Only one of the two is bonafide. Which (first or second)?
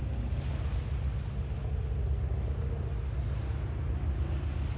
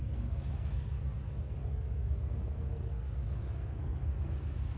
first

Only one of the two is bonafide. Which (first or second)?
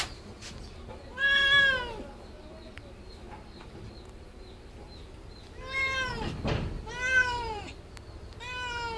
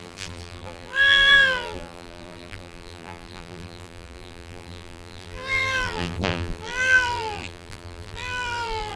first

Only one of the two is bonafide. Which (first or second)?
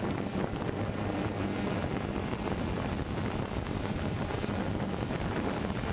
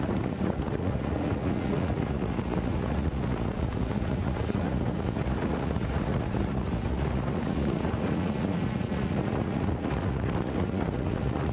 first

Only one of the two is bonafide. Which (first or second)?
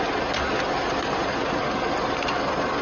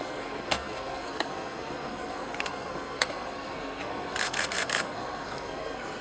first